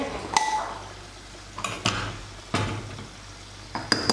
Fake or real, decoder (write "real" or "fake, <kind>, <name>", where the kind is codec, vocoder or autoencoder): real